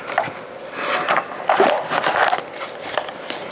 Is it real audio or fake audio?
real